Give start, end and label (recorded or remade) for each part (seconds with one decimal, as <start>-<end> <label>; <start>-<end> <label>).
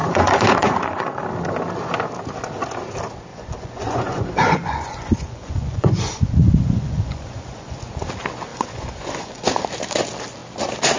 0.0-1.2 remade; 1.2-3.3 recorded; 3.3-7.8 remade; 7.8-8.5 recorded; 8.5-9.6 remade; 9.6-11.0 recorded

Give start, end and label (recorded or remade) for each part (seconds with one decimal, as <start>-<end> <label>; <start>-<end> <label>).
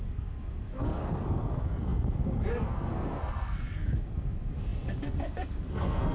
0.0-6.1 remade